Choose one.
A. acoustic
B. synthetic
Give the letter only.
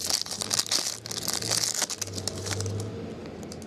A